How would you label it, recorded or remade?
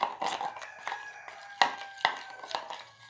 recorded